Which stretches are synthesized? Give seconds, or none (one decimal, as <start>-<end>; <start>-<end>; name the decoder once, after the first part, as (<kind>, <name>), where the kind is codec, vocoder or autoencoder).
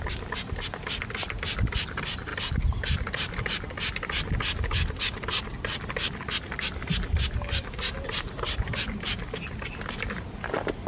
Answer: none